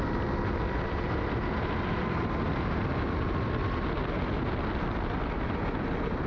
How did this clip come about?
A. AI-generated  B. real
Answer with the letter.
B